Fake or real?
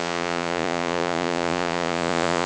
fake